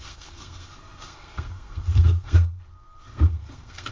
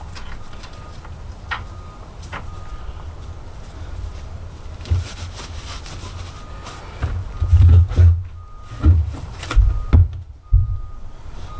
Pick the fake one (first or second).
first